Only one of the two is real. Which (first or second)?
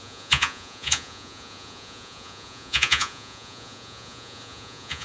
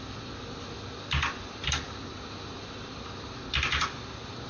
second